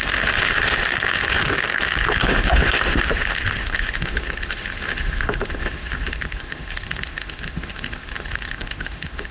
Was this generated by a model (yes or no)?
yes